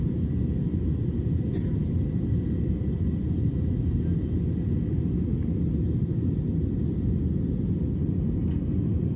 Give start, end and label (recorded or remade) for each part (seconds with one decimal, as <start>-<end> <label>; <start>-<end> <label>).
0.0-9.2 recorded